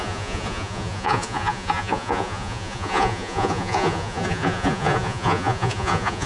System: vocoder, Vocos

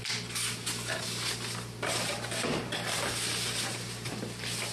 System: none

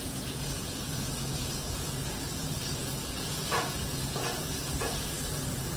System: vocoder, Vocos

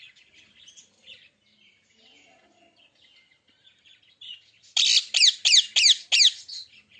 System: none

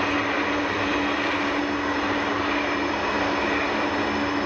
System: none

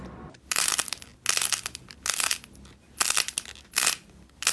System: none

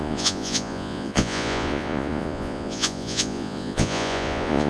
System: vocoder, Vocos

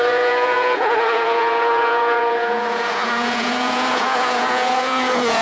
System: vocoder, Vocos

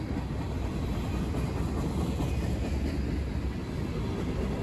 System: none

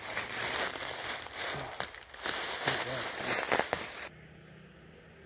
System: none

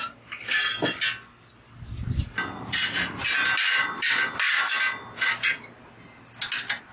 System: none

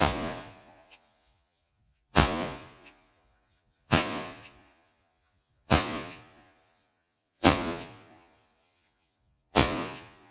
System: vocoder, Vocos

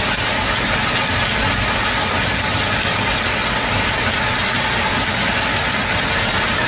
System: none